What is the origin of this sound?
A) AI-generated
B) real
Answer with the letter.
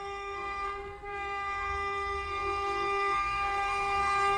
A